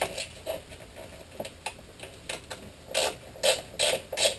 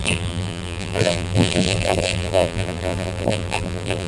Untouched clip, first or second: first